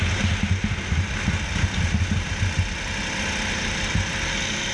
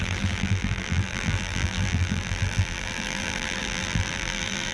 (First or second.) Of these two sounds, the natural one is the first